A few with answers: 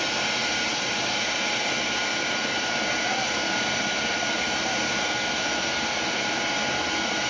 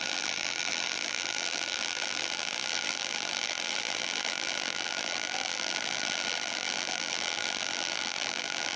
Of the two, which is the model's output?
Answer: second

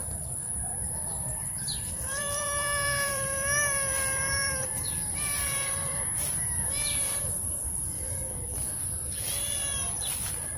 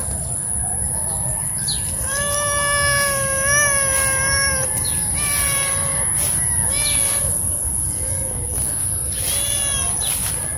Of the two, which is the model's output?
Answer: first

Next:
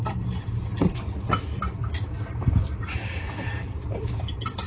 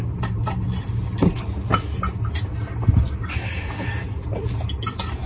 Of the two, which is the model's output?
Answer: first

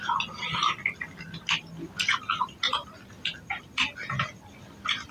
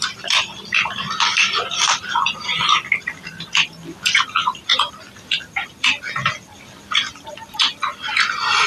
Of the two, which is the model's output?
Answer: second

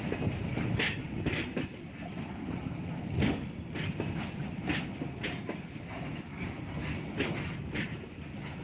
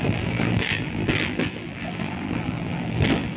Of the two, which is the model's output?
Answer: second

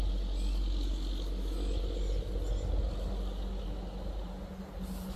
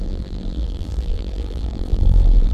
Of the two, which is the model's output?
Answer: second